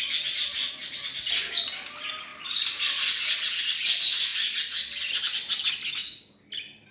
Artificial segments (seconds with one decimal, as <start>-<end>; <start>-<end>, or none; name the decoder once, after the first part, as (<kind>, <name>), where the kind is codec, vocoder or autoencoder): none